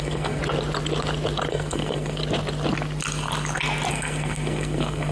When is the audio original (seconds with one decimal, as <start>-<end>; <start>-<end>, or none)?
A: 0.4-1.5; 2.2-3.9